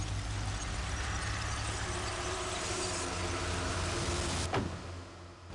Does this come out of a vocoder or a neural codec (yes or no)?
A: no